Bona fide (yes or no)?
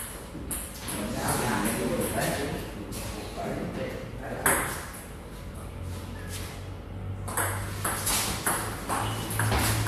yes